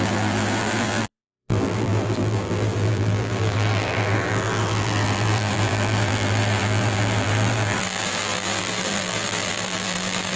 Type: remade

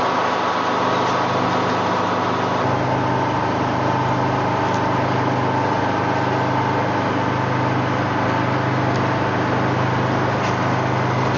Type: recorded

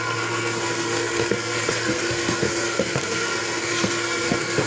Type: remade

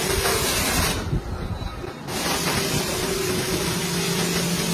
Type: recorded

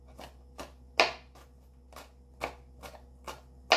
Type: recorded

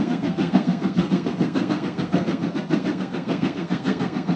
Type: remade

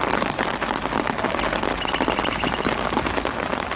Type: recorded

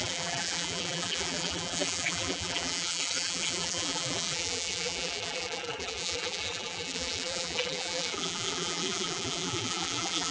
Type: remade